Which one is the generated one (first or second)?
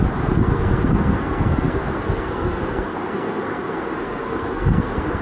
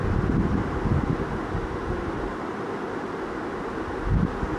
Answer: first